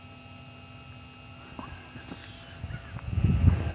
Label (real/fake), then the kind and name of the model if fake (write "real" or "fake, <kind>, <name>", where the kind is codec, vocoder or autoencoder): real